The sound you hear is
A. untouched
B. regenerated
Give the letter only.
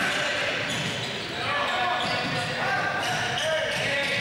A